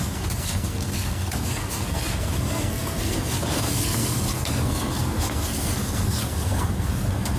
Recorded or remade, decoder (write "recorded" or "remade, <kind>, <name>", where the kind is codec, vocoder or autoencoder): remade, codec, SNAC